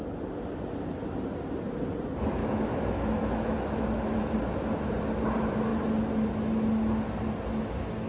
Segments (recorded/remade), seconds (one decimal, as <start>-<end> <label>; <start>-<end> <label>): 0.0-2.4 recorded; 2.4-4.2 remade; 4.2-8.1 recorded